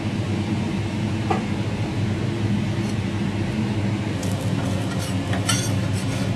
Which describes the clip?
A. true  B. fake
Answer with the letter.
A